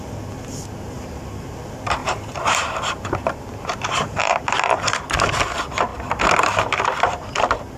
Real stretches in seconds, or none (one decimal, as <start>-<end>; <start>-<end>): 0.0-2.0; 4.8-7.8